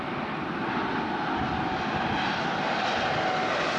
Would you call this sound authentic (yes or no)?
yes